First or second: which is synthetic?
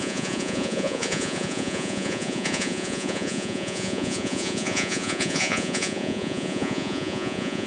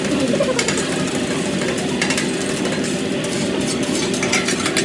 first